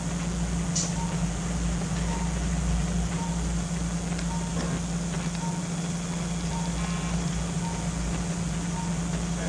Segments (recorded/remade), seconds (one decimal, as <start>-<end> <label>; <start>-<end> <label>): 0.0-9.5 recorded